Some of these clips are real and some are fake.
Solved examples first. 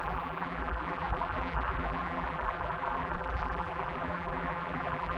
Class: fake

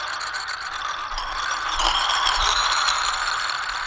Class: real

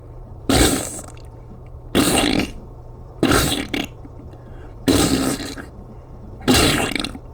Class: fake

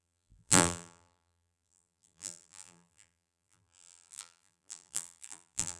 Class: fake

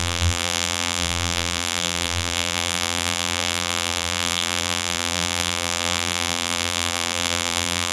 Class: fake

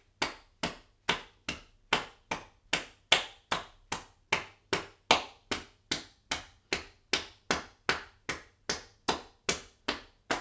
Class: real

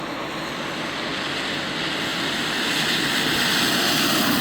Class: real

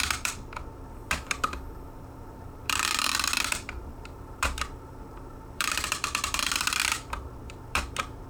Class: fake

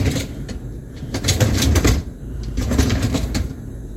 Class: fake